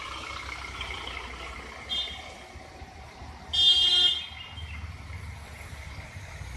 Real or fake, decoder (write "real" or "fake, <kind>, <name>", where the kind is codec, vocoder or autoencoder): real